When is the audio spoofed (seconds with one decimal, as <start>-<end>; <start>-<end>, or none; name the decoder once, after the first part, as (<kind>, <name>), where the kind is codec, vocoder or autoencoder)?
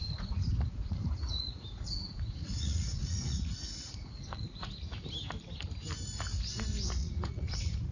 0.0-4.7 (vocoder, Vocos); 7.0-7.9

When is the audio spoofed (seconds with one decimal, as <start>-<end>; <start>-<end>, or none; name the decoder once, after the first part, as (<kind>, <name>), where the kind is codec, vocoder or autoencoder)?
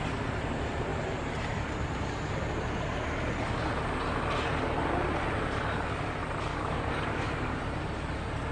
6.5-7.6 (codec, DAC)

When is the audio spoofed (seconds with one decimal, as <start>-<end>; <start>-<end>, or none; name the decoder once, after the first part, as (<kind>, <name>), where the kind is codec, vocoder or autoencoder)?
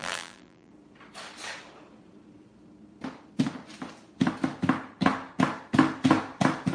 0.0-0.7 (vocoder, BigVGAN v2)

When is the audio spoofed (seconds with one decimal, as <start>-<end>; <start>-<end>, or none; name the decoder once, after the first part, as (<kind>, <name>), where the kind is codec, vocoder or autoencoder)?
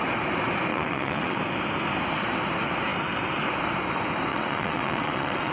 0.7-1.4 (vocoder, WaveNeXt); 4.3-5.5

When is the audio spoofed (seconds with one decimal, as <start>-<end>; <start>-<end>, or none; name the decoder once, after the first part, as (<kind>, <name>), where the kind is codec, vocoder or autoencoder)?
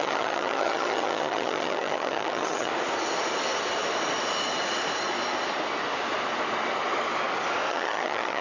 0.0-2.7 (vocoder, HiFi-GAN); 7.7-8.4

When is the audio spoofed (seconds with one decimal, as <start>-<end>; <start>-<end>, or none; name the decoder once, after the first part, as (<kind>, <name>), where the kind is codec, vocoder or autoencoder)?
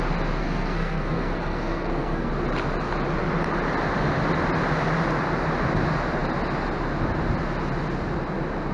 0.4-2.3 (codec, SNAC)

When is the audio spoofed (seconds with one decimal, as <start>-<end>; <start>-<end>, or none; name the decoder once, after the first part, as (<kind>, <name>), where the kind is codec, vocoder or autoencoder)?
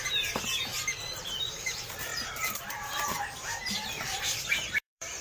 0.0-0.7 (vocoder, BigVGAN v2); 1.5-5.2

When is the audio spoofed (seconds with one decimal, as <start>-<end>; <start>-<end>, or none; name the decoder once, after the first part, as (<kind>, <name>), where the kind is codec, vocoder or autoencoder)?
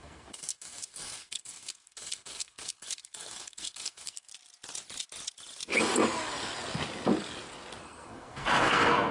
0.0-4.3 (codec, SNAC); 7.8-9.1